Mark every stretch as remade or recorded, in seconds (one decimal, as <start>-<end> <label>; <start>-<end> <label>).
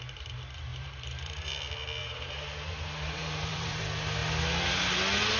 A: 0.0-0.7 recorded; 0.7-1.5 remade; 1.5-2.0 recorded; 2.0-3.8 remade; 3.8-5.4 recorded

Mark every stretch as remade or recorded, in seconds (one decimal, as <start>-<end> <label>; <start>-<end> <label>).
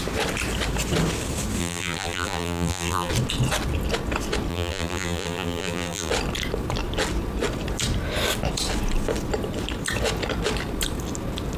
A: 0.0-1.6 recorded; 1.6-3.1 remade; 3.1-4.5 recorded; 4.5-6.1 remade; 6.1-11.6 recorded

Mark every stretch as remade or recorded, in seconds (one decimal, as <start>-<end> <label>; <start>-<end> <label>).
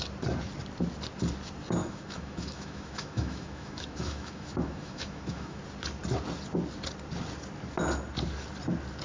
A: 0.0-1.8 recorded; 1.8-5.6 remade; 5.6-9.0 recorded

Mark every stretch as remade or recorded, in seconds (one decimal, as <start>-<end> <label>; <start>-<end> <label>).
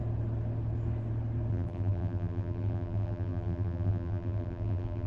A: 0.0-1.5 recorded; 1.5-5.1 remade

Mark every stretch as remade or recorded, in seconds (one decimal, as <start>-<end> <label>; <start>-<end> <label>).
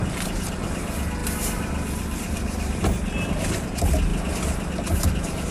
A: 0.0-1.2 recorded; 1.2-2.8 remade; 2.8-5.5 recorded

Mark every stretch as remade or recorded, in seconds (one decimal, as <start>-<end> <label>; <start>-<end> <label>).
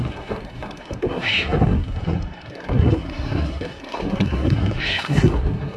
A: 0.0-5.8 remade